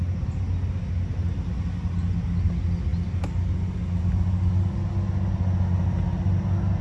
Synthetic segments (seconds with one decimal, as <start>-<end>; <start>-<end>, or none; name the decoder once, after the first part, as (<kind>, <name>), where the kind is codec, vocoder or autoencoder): none